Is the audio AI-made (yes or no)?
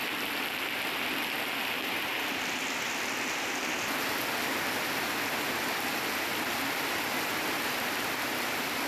no